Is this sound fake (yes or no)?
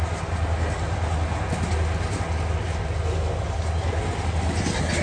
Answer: no